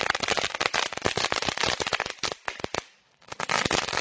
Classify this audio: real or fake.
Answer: real